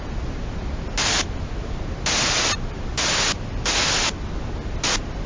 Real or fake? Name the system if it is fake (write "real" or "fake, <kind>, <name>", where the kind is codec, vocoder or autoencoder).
real